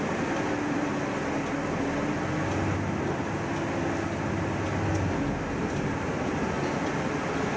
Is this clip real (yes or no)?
yes